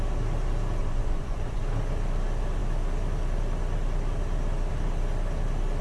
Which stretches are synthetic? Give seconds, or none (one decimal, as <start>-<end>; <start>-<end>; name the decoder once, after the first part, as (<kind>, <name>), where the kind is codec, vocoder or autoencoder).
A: 0.8-1.6 (vocoder, Vocos)